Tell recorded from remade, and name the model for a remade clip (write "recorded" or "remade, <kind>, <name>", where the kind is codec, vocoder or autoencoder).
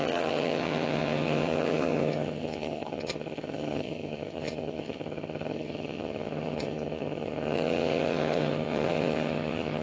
remade, vocoder, HiFi-GAN